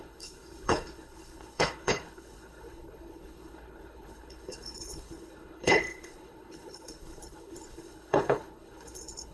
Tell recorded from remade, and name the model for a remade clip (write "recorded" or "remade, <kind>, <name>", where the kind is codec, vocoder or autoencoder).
remade, codec, HILCodec